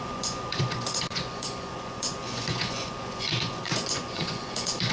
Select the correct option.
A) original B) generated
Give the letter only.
B